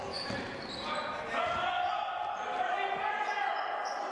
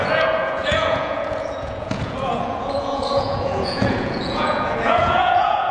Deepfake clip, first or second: second